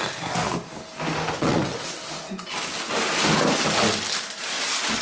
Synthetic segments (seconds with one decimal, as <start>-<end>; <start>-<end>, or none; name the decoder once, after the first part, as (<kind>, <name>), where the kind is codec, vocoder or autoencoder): 1.4-2.1 (vocoder, WaveNeXt)